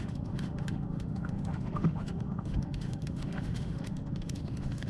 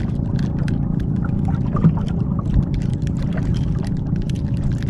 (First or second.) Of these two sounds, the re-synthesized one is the first